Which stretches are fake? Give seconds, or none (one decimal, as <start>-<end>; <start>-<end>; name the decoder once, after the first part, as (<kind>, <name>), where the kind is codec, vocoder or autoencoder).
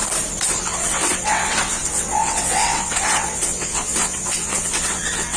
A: 0.6-5.4 (vocoder, WaveNeXt)